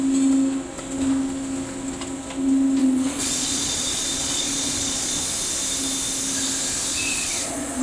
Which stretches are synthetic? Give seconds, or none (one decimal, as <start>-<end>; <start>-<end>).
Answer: 2.8-5.2; 6.9-7.8